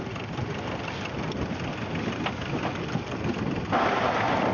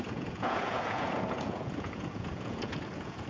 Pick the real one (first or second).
first